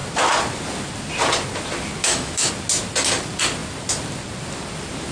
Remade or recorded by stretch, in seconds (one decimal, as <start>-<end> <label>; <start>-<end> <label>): 0.0-2.0 recorded; 2.0-2.5 remade; 2.5-5.1 recorded